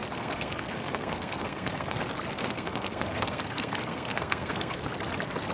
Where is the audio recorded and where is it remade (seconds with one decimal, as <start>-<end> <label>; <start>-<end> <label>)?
0.0-2.0 remade; 2.0-2.4 recorded; 2.4-4.9 remade; 4.9-5.5 recorded